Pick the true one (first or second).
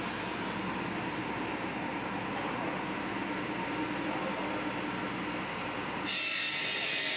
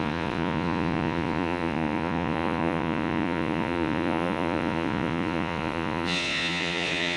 first